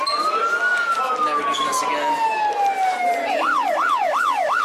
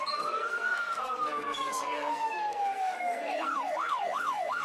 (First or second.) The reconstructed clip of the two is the second